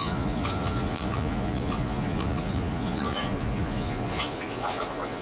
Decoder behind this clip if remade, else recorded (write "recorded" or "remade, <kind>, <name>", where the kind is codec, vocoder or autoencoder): remade, vocoder, Vocos